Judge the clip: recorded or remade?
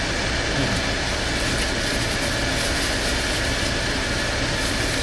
recorded